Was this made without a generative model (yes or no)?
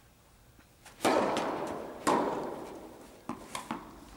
yes